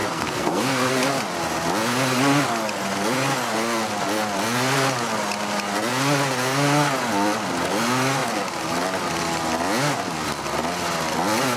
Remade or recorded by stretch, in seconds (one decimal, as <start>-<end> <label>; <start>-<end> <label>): 0.0-0.9 remade; 0.9-11.6 recorded